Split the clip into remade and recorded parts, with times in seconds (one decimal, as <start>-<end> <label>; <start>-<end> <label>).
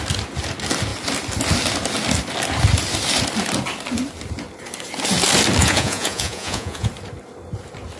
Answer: 0.0-5.6 recorded; 5.6-6.9 remade; 6.9-8.0 recorded